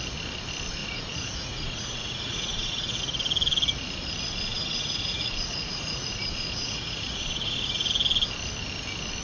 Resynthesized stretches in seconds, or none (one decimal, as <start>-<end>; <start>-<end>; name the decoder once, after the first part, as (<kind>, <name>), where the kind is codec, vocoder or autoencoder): 0.8-3.0 (vocoder, Vocos); 4.5-7.9